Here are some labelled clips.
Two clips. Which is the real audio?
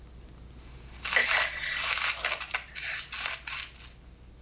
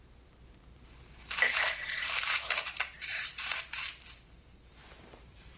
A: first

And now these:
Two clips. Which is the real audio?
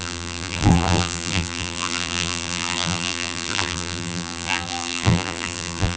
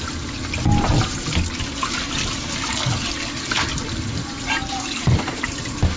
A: second